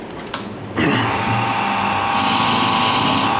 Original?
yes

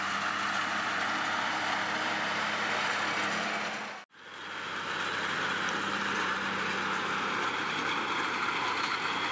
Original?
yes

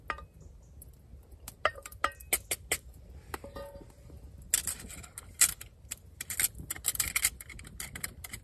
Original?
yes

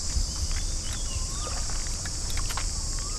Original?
yes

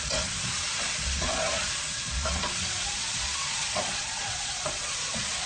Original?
no